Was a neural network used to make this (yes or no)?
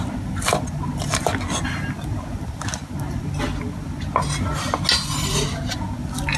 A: no